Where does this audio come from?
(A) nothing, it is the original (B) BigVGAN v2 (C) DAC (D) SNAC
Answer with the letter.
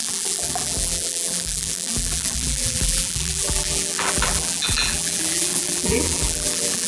B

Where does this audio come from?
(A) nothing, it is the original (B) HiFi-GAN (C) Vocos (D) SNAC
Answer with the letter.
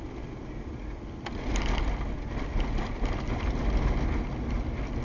A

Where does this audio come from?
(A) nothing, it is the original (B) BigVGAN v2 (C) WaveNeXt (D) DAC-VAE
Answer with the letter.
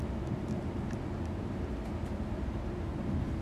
A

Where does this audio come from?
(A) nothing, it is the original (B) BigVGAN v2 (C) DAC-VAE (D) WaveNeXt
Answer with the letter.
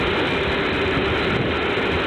A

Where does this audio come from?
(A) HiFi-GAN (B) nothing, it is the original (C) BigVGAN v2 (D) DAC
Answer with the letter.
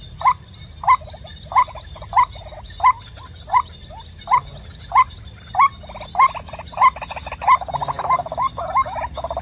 B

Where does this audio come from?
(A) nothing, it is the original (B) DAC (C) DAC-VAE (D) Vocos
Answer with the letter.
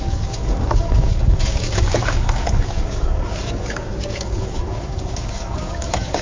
B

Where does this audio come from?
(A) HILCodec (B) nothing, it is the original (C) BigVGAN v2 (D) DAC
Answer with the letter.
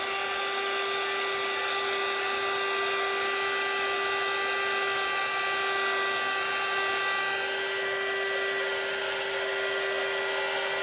B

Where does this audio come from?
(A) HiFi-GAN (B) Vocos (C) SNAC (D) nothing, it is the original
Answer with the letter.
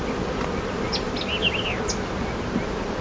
D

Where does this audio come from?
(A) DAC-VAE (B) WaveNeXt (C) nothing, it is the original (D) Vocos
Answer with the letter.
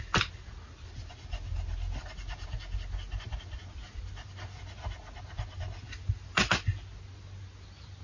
C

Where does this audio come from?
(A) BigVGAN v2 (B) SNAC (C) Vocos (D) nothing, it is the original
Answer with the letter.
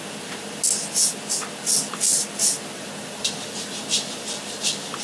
D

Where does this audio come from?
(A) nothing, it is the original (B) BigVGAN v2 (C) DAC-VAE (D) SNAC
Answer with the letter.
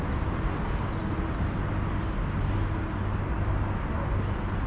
A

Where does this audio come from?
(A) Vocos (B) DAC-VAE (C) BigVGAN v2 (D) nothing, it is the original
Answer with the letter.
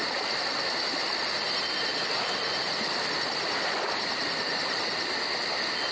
D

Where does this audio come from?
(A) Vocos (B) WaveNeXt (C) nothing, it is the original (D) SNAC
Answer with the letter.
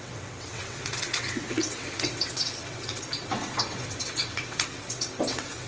B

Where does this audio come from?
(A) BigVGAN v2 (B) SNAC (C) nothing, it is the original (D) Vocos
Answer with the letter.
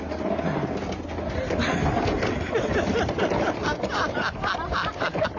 C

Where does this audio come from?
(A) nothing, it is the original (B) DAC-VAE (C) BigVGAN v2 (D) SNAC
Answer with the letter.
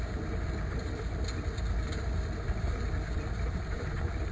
A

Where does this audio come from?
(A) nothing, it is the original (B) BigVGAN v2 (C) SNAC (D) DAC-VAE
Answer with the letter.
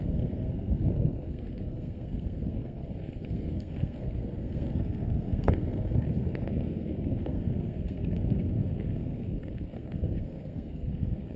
C